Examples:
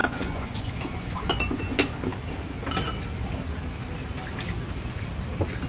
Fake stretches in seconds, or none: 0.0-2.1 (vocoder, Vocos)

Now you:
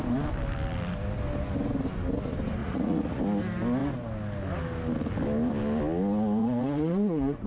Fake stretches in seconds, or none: 2.6-3.2 (vocoder, Vocos); 6.4-7.5

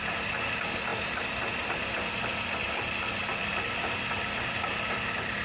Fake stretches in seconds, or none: none

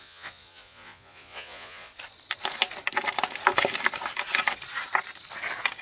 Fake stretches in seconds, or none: 0.0-1.9 (vocoder, Vocos)

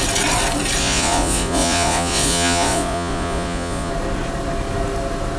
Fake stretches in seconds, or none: 0.8-3.9 (vocoder, Vocos)